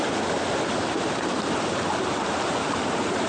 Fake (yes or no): no